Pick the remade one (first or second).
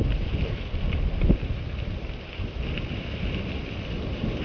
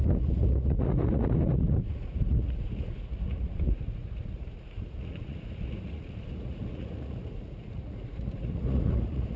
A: second